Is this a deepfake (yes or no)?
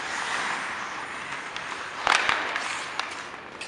no